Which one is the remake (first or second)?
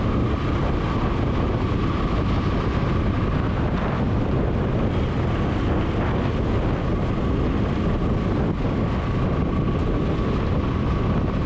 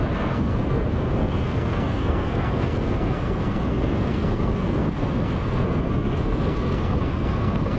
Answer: second